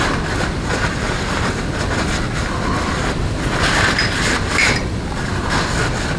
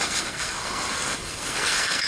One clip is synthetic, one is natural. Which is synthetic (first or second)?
second